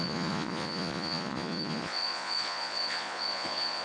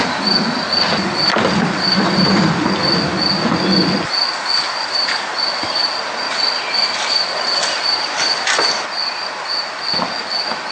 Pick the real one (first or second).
second